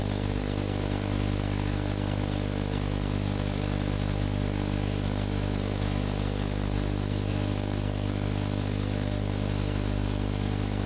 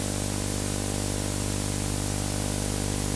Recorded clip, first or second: second